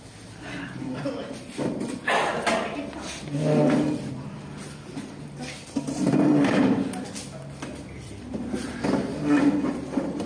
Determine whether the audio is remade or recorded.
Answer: recorded